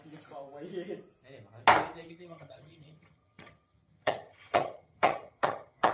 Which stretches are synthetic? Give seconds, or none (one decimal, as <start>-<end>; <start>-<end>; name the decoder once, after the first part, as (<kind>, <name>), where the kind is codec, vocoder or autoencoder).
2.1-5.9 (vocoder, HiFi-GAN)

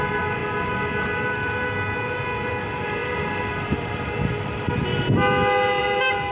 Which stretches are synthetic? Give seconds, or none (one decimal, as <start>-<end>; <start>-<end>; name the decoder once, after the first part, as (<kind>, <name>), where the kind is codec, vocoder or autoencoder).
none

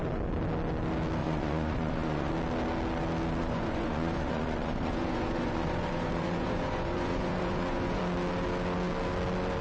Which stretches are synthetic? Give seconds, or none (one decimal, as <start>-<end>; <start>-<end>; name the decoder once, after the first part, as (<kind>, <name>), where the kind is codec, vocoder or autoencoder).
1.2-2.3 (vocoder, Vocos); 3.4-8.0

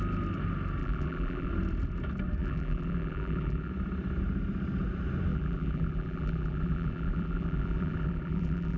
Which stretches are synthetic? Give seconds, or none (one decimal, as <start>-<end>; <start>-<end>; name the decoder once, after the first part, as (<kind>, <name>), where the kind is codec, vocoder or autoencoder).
0.8-1.5 (vocoder, BigVGAN v2); 2.4-3.7; 5.3-8.8

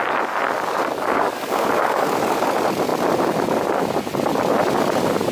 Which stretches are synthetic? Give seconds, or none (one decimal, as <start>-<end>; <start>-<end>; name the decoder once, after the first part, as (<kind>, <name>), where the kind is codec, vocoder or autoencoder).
0.8-2.5 (codec, DAC)

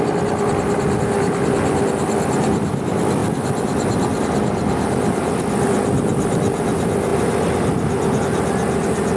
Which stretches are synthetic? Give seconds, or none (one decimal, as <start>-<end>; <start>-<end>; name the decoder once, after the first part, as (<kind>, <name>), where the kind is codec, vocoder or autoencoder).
none

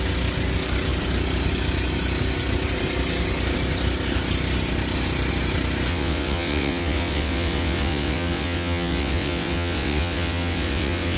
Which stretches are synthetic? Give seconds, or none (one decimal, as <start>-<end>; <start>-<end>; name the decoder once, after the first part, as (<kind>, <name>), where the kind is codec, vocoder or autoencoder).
5.9-11.2 (vocoder, WaveNeXt)